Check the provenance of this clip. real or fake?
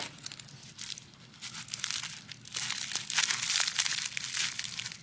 real